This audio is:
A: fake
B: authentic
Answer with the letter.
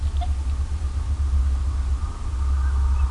B